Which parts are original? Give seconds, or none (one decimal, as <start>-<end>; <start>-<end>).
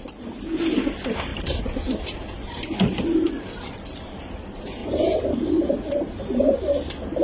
0.0-1.3; 4.3-4.8; 6.5-7.2